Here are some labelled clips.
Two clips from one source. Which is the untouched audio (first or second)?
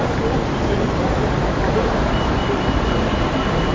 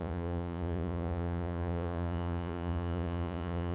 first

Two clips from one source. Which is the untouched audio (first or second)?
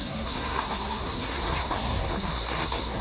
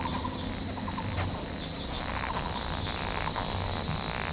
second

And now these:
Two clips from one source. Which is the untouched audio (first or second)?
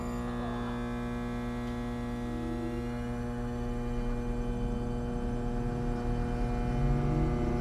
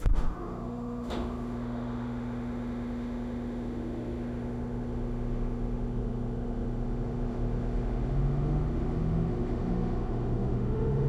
first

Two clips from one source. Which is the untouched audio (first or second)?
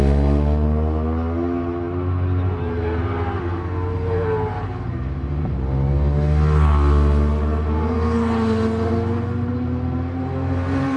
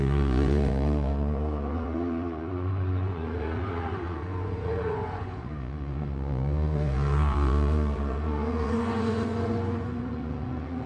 first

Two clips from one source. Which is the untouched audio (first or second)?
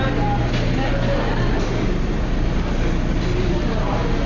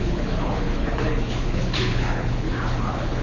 first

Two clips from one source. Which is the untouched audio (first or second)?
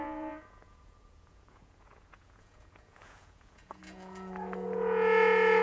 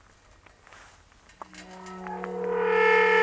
second